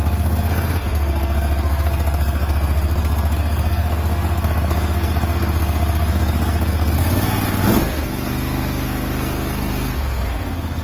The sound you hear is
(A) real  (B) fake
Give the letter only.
B